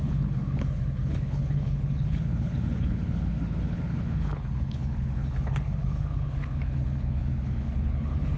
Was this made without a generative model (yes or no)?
no